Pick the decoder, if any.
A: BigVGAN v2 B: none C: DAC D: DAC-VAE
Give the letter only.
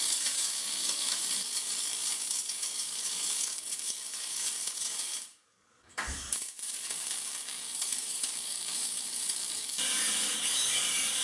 C